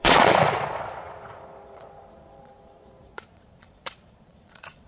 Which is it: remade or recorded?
remade